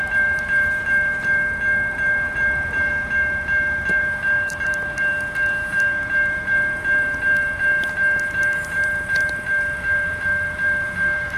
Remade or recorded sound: remade